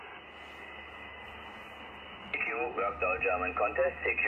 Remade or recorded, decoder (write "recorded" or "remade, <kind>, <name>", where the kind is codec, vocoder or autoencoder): recorded